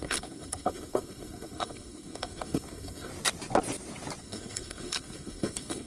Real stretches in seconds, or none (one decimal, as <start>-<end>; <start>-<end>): 3.1-4.2

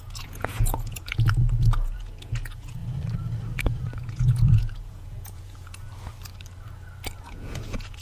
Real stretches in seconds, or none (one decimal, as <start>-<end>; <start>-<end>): 2.8-3.6; 5.9-7.2

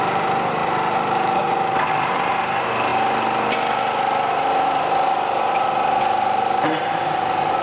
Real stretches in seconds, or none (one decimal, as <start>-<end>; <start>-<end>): 2.9-6.0